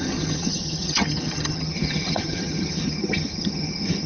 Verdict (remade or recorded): remade